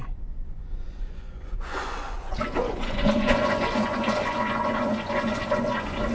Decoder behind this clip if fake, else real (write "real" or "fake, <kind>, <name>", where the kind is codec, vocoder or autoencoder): fake, vocoder, Vocos